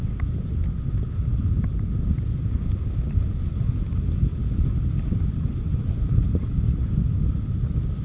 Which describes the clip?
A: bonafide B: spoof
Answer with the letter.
A